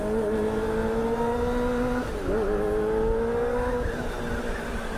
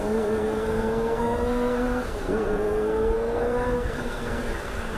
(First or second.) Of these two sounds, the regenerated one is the second